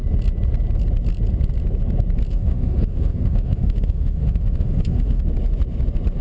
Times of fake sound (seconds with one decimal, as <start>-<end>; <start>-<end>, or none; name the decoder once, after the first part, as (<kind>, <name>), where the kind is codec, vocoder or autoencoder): 2.3-5.2 (autoencoder, DAC-VAE)